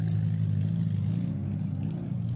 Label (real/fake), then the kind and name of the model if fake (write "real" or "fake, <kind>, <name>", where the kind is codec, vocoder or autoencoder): real